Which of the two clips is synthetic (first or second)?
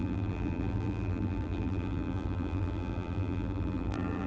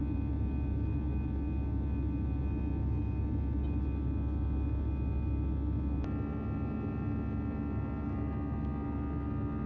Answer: first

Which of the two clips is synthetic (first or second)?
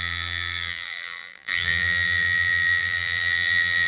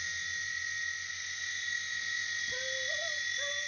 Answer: first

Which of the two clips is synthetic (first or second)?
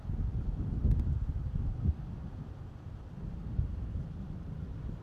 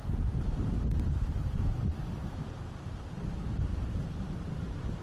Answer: second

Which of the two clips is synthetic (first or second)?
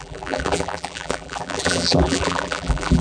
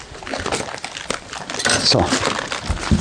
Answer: first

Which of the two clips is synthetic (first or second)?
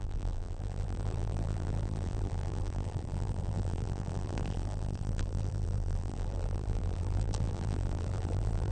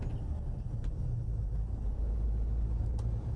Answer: first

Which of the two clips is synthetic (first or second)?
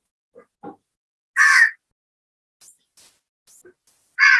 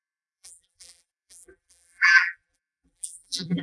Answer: second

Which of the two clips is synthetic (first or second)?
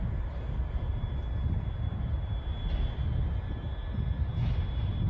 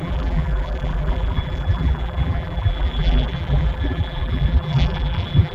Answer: second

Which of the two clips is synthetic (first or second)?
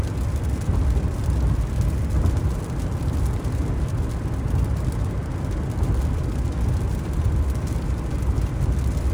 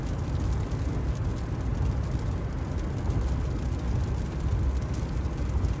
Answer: first